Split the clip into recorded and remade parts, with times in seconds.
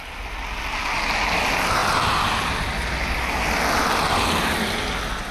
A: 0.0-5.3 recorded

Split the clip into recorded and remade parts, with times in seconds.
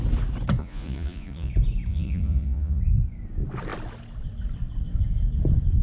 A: 0.0-0.6 recorded; 0.6-1.5 remade; 1.5-1.9 recorded; 1.9-2.8 remade; 2.8-5.8 recorded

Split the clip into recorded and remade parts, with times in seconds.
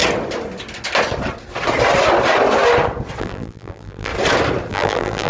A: 0.0-3.2 recorded; 3.2-4.1 remade; 4.1-4.7 recorded; 4.7-5.3 remade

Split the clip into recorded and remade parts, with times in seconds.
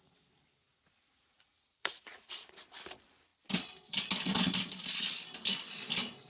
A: 0.0-0.6 recorded; 0.6-2.5 remade; 2.5-6.3 recorded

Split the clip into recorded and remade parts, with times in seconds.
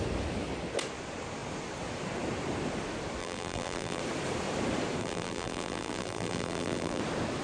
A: 0.0-3.2 recorded; 3.2-4.0 remade; 4.0-5.0 recorded; 5.0-7.0 remade; 7.0-7.4 recorded